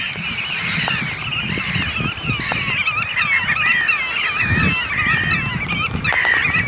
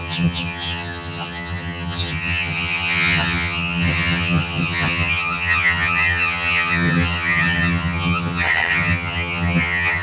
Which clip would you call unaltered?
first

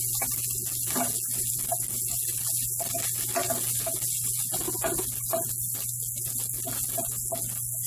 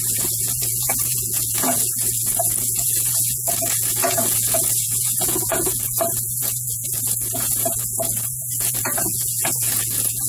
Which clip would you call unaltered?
first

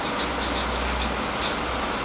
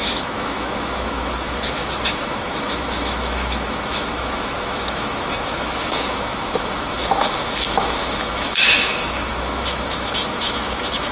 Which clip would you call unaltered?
first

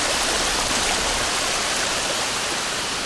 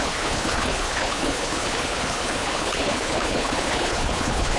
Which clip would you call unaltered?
first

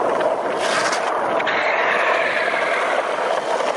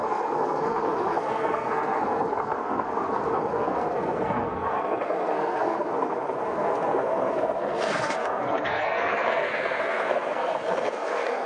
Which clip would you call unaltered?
first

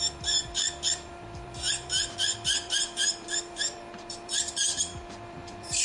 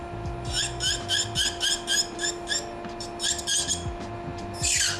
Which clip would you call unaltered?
second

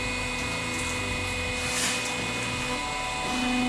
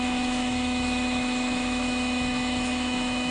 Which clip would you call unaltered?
first